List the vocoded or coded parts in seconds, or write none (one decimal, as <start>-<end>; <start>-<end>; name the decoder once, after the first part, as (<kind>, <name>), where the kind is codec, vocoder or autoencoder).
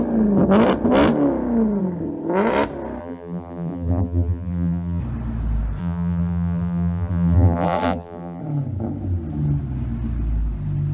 3.0-5.0 (vocoder, BigVGAN v2); 5.8-8.4